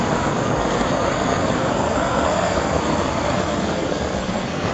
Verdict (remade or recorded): remade